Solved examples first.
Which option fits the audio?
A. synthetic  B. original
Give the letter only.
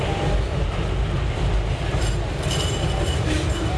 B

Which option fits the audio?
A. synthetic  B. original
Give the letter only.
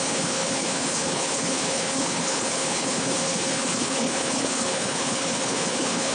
A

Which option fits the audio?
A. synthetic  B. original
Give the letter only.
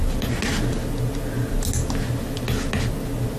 B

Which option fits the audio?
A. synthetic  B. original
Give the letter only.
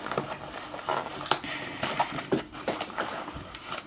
B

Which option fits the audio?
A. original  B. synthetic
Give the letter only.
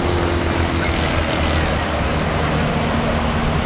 A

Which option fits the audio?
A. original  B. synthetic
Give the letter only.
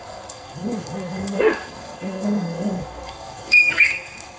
B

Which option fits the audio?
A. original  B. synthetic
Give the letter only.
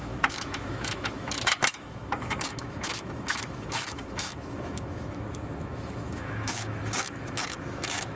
B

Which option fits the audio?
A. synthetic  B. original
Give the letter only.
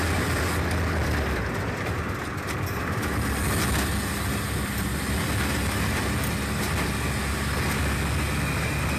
B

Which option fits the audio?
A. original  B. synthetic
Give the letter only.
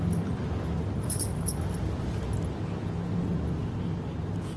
A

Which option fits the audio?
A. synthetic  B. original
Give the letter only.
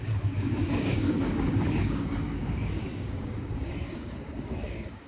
A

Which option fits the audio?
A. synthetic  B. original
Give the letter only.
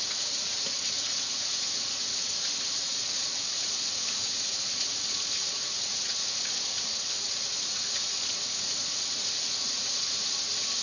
A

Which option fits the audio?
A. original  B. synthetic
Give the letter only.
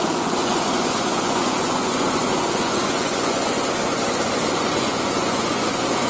B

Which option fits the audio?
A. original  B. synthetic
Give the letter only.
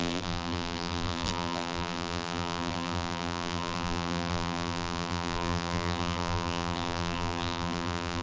B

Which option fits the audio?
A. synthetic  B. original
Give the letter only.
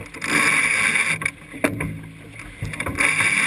B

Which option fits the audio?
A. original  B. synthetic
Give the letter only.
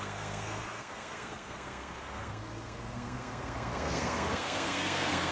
B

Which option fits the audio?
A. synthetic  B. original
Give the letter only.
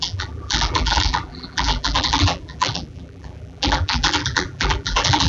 A